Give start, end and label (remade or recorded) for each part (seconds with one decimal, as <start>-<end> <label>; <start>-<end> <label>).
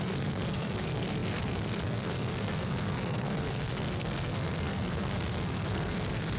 0.0-6.4 remade